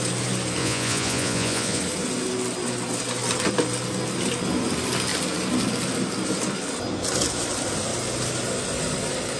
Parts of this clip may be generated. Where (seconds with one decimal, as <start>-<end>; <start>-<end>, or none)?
0.6-1.8